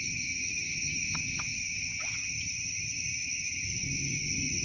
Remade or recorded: remade